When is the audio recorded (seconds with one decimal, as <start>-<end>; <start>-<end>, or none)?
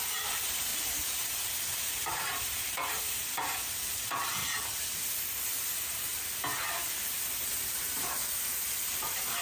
4.4-5.3; 6.1-7.7